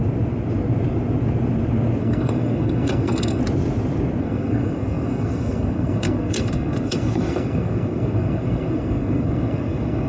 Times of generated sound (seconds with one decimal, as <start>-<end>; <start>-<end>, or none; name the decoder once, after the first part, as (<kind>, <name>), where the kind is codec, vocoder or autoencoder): 2.0-3.4 (codec, SNAC); 4.2-10.1